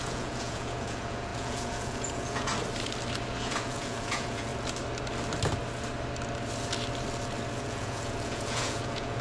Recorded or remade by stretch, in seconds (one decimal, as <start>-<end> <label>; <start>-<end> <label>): 0.0-2.5 remade; 2.5-3.4 recorded; 3.4-4.5 remade; 4.5-7.6 recorded; 7.6-9.2 remade

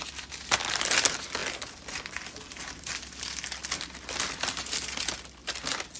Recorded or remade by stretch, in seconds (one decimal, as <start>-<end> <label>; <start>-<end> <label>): 0.0-6.0 recorded

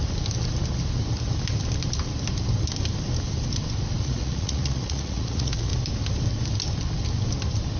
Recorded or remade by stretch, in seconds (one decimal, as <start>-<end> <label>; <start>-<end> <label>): 0.0-4.0 recorded; 4.0-5.7 remade; 5.7-7.8 recorded

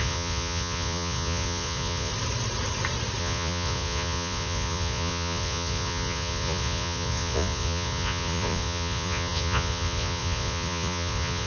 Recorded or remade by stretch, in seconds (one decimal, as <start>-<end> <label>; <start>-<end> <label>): 0.0-2.1 remade; 2.1-3.2 recorded; 3.2-11.5 remade

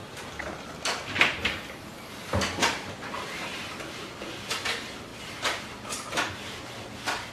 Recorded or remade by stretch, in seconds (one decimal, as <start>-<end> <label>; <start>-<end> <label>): 0.0-7.3 recorded

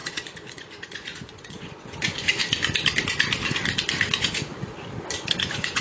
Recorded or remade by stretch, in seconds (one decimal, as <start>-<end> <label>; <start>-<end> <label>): 0.0-2.4 remade; 2.4-4.1 recorded; 4.1-4.5 remade; 4.5-5.3 recorded; 5.3-5.8 remade

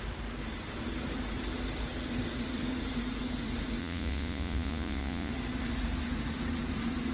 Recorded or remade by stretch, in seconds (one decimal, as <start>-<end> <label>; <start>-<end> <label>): 0.0-3.8 recorded; 3.8-5.3 remade; 5.3-7.1 recorded

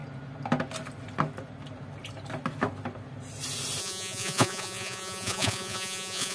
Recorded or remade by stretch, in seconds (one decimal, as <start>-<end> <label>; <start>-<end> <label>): 0.0-3.8 recorded; 3.8-6.3 remade